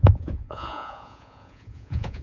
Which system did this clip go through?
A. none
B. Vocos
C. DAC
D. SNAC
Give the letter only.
B